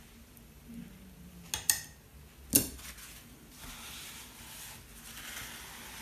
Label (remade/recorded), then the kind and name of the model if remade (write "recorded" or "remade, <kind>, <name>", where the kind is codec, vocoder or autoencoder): recorded